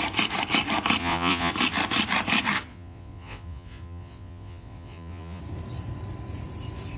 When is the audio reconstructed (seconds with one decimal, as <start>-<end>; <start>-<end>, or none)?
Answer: 1.0-1.5; 2.7-5.4

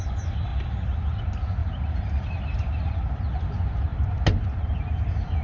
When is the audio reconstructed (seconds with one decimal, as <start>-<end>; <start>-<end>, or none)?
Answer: 1.6-3.2

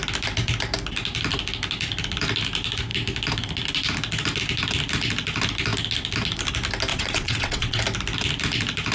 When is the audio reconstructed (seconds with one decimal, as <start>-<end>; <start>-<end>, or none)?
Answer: 6.9-7.8

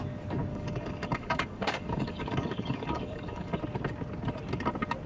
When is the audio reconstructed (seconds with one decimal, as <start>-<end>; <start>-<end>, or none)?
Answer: 0.5-3.6

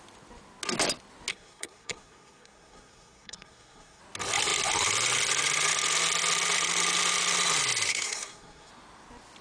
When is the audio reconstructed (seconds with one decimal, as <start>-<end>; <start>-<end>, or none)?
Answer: 1.3-4.0; 7.9-8.7

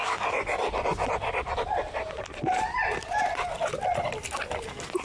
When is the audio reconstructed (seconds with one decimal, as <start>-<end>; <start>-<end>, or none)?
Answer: none